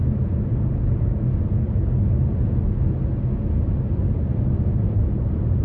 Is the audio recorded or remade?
recorded